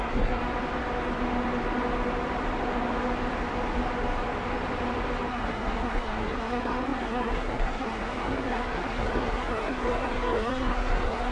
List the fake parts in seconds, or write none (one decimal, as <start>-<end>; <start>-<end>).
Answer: 0.0-0.4; 5.3-11.3